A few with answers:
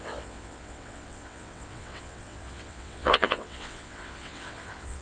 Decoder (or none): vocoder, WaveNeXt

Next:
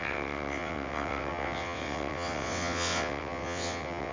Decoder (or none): vocoder, WaveNeXt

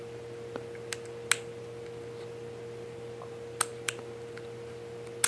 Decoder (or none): none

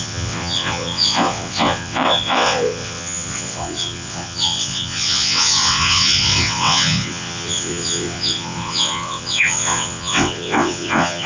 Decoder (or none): vocoder, WaveNeXt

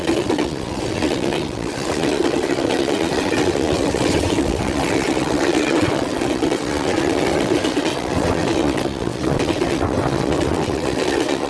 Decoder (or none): vocoder, WaveNeXt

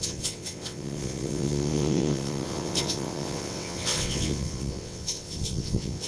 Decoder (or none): vocoder, WaveNeXt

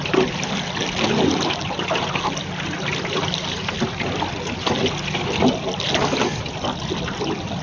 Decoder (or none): none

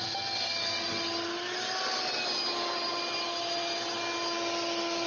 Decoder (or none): none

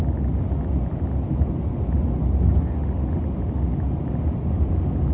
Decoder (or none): none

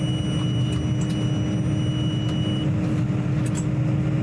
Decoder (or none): none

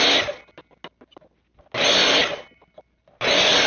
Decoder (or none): none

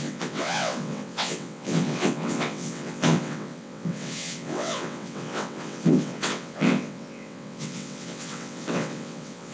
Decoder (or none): vocoder, WaveNeXt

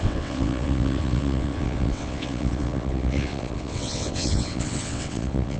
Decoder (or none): vocoder, WaveNeXt